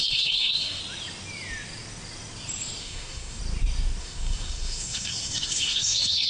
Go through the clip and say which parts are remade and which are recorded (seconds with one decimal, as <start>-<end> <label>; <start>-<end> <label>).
0.0-0.8 remade; 0.8-2.8 recorded; 2.8-3.4 remade; 3.4-4.0 recorded; 4.0-6.3 remade